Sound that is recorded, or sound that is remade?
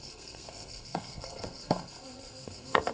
remade